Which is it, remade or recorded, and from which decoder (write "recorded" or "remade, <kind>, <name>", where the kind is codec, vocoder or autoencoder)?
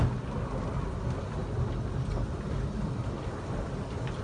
recorded